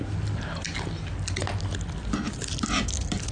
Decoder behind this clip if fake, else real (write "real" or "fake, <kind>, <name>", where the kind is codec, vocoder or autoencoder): real